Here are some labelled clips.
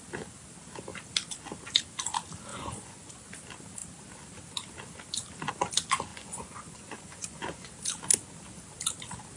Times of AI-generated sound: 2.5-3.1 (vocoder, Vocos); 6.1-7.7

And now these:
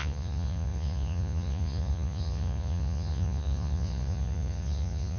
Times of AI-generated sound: 0.0-5.2 (vocoder, Vocos)

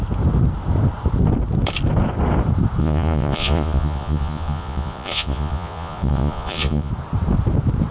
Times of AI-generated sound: 2.8-6.9 (vocoder, Vocos)

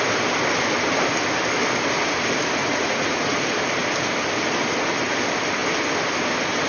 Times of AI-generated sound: 2.6-3.4 (vocoder, Vocos)

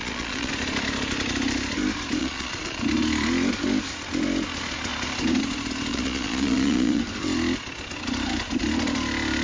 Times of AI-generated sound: 0.0-0.5 (vocoder, Vocos); 2.2-2.8; 5.9-7.0

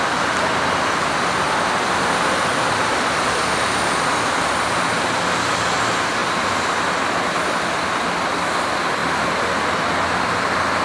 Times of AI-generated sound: none

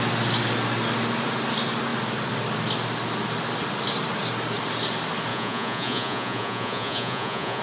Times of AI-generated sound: 5.3-7.6 (vocoder, Vocos)